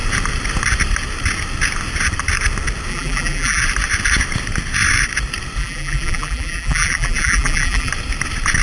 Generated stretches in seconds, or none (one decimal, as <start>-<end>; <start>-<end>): 2.9-3.6; 5.6-7.9